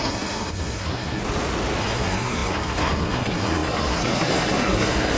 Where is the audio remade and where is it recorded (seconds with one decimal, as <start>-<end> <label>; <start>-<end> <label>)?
0.0-1.2 remade; 1.2-1.8 recorded; 1.8-5.2 remade